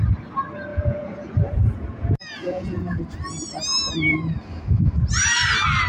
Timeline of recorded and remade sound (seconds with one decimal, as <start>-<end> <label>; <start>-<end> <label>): 0.0-0.7 recorded; 0.7-3.0 remade; 3.0-5.9 recorded